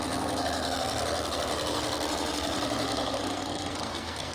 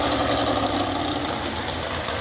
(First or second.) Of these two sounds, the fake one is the first